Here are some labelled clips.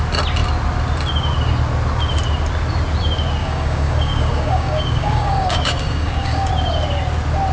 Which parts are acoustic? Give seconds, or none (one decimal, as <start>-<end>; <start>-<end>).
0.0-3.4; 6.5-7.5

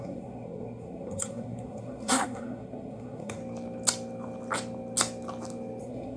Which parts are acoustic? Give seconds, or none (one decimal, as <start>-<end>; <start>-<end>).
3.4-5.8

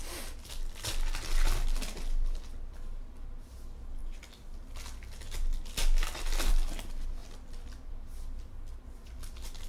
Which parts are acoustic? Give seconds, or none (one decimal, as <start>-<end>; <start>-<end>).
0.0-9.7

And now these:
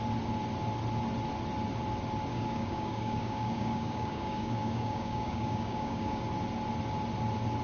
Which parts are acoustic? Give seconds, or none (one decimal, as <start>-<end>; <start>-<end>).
0.0-2.3; 6.2-7.6

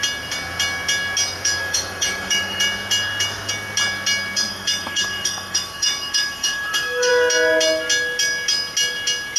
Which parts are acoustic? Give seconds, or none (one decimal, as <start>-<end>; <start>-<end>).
0.0-1.6; 2.6-4.5; 7.1-9.4

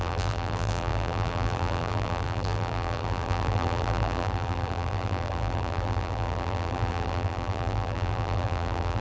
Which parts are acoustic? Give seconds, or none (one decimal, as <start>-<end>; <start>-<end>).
none

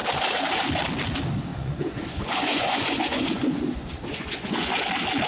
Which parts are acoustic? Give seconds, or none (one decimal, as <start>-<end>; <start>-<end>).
0.0-1.5; 4.7-5.3